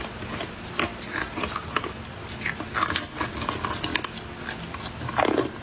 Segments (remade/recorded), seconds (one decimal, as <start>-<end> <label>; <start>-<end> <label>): 0.0-5.6 recorded